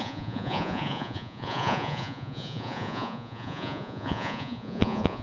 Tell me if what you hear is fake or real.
fake